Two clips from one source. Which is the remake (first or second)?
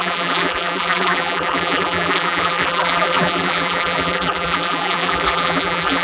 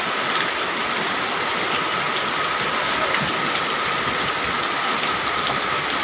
first